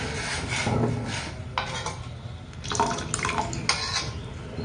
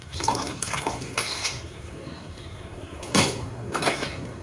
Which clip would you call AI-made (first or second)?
second